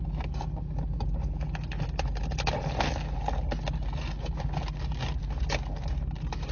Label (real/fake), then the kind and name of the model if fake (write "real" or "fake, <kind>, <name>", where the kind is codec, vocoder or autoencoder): real